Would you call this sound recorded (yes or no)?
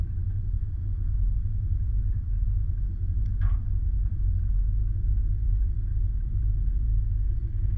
no